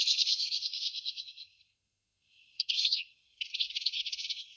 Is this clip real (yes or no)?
no